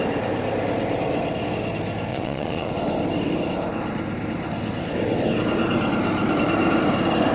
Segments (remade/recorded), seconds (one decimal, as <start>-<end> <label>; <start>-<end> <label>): 0.0-2.1 recorded; 2.1-2.7 remade; 2.7-7.3 recorded